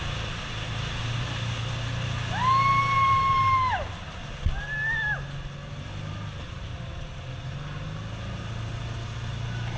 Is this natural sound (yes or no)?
yes